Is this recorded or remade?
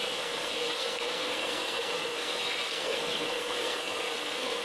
remade